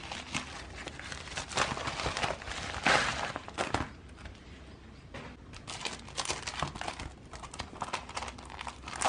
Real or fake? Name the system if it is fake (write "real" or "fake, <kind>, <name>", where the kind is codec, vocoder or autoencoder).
real